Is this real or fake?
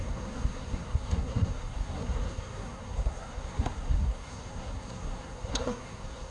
fake